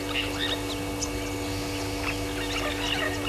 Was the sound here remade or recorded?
recorded